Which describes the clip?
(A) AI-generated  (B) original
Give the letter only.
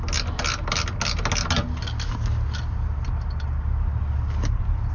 B